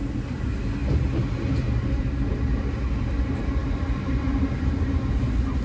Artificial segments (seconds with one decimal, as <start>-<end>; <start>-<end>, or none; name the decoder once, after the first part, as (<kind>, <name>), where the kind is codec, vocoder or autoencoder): none